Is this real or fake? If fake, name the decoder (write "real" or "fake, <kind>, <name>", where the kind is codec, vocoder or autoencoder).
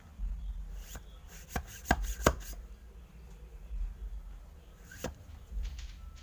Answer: real